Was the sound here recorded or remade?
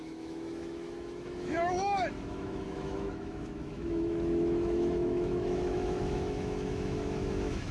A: remade